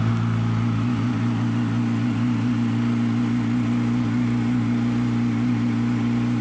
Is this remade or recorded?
recorded